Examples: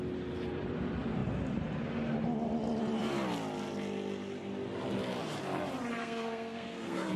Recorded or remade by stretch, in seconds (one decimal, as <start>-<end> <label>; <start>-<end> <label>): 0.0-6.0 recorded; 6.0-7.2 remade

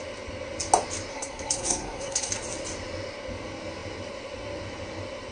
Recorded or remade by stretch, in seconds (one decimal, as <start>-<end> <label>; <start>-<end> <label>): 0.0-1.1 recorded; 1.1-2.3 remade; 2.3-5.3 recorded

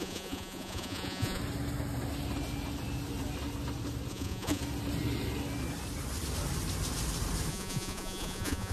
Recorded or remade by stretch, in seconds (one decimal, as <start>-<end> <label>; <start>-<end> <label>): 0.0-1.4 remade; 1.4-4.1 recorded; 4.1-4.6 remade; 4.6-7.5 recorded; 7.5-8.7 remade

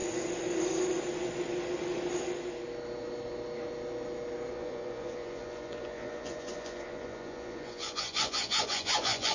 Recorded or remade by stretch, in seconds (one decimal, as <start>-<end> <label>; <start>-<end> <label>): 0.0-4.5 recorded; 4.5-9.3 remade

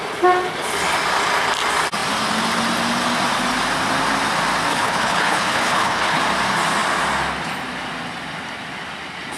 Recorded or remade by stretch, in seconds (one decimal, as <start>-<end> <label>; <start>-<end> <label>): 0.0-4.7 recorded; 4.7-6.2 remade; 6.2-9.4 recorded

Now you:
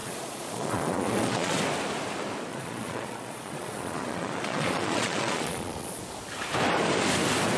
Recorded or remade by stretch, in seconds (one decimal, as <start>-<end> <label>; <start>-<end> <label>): 0.0-1.6 remade; 1.6-2.5 recorded; 2.5-6.0 remade; 6.0-7.6 recorded